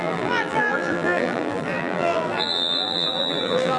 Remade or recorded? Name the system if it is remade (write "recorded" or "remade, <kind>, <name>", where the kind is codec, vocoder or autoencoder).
remade, vocoder, BigVGAN v2